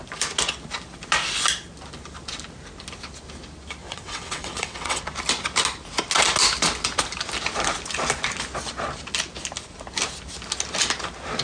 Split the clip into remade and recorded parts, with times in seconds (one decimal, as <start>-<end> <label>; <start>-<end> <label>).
0.0-3.8 recorded; 3.8-5.0 remade; 5.0-11.4 recorded